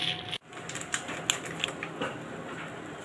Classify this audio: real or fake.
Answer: real